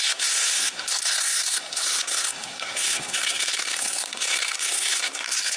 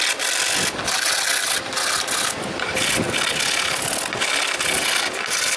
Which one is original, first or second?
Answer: second